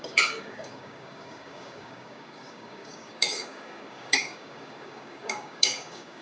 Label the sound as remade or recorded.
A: remade